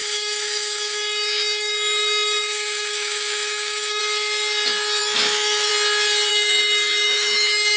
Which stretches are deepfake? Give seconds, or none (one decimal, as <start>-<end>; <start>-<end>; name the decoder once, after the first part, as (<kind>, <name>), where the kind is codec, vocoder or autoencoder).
0.0-4.0 (autoencoder, DAC-VAE); 5.0-5.7; 6.3-7.8